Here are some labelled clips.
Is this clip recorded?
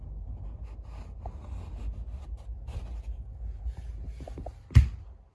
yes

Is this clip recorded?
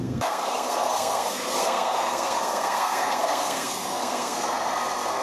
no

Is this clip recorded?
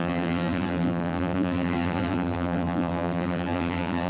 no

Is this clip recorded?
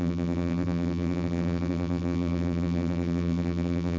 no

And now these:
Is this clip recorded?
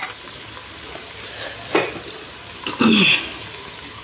yes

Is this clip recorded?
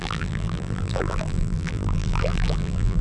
no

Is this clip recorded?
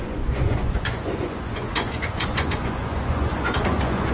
no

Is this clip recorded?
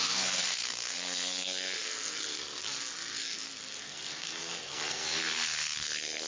no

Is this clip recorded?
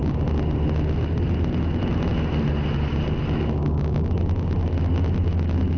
yes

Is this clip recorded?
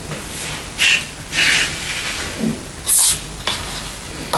yes